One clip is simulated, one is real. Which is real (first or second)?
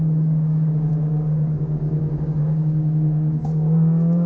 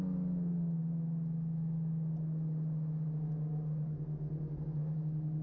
second